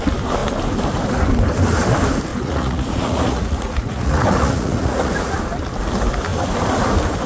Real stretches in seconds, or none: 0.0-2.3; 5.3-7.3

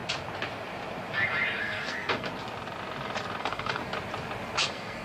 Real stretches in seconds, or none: 0.0-1.6; 2.3-3.4; 3.8-4.6